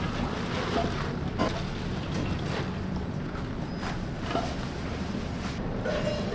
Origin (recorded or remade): recorded